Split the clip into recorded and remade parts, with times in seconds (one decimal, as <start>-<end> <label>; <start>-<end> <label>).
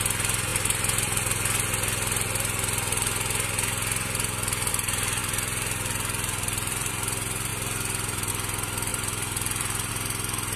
0.0-5.2 recorded; 5.2-6.9 remade; 6.9-8.9 recorded; 8.9-9.9 remade; 9.9-10.6 recorded